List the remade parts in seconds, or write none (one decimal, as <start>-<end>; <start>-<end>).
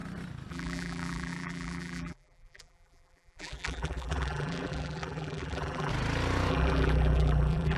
0.5-5.9; 6.5-7.8